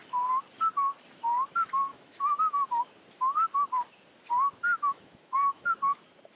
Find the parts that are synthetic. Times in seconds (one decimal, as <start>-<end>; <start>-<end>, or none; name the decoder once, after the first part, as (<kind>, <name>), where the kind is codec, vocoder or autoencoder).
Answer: 1.9-2.8 (autoencoder, DAC-VAE); 4.7-5.7